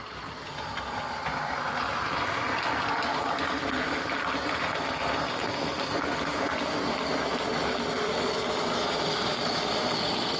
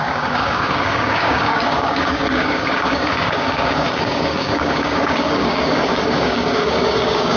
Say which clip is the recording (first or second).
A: first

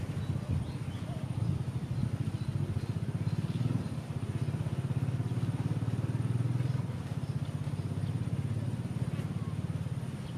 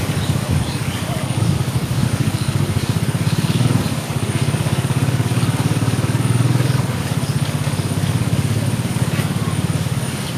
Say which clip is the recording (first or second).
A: first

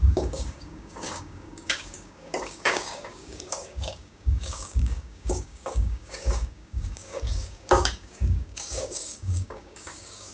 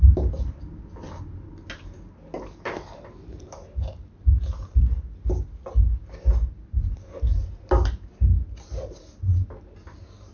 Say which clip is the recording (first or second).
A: second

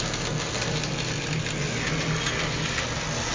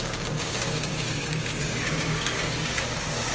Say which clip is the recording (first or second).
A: first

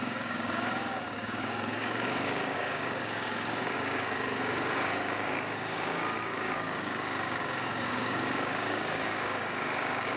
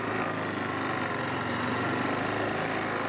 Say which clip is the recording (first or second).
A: second